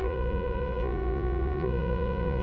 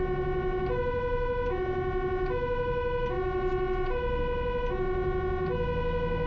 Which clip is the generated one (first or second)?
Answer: first